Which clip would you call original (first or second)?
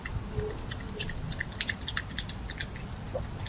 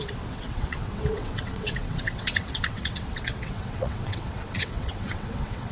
first